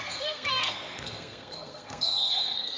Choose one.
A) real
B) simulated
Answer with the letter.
B